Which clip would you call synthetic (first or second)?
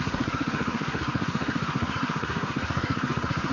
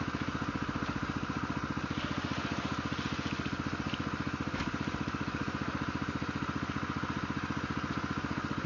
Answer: first